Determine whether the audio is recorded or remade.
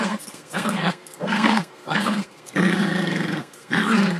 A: remade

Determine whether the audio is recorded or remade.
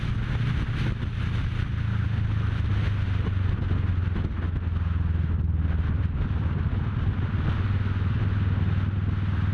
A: recorded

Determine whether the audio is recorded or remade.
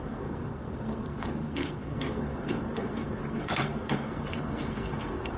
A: remade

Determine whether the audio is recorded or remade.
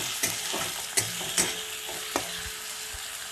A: recorded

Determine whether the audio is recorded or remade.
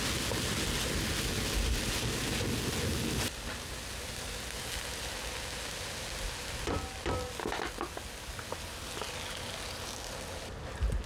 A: recorded